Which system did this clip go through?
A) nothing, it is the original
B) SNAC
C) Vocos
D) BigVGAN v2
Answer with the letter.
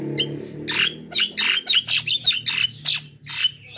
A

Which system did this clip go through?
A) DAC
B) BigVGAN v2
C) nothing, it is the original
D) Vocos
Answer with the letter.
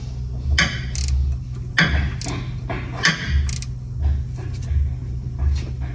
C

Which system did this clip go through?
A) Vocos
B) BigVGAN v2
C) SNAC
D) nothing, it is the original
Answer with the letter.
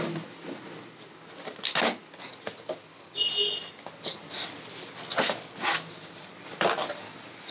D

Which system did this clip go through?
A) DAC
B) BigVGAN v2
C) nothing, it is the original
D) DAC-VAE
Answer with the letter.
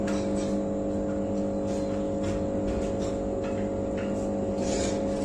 C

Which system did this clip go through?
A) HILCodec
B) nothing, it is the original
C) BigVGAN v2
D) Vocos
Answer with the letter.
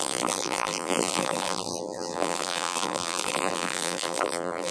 C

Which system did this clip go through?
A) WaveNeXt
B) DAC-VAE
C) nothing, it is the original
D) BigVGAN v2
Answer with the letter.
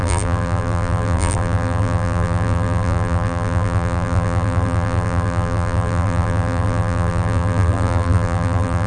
D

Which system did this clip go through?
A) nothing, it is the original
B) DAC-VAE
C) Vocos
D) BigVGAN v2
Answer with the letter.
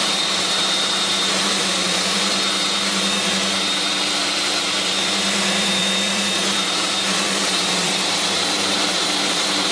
D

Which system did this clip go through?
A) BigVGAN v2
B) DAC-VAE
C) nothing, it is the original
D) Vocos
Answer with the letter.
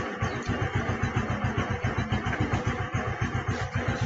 C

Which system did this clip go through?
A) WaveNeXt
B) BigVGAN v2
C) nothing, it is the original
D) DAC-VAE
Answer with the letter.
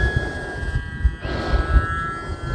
C